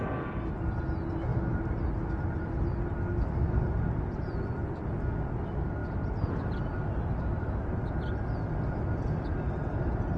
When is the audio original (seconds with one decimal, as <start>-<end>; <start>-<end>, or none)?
0.0-10.2